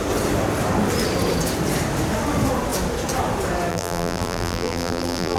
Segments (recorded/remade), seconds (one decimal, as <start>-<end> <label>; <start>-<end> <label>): 0.0-3.7 recorded; 3.7-5.4 remade